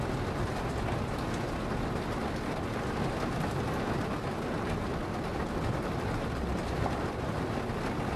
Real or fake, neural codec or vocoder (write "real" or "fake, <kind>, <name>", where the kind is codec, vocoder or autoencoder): real